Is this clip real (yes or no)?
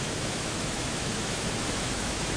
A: no